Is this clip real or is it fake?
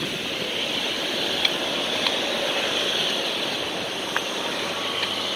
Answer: real